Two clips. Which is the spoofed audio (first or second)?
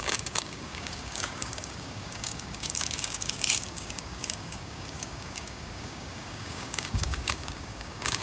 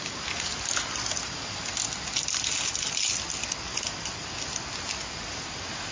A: first